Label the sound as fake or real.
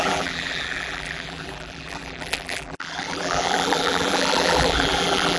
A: fake